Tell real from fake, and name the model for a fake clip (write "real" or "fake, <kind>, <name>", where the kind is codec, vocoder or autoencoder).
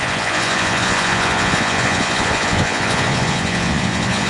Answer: fake, vocoder, Vocos